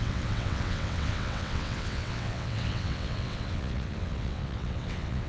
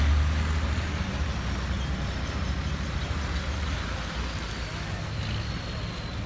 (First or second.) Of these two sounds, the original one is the second